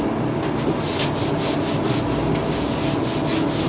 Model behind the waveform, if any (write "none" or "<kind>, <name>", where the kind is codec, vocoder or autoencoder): none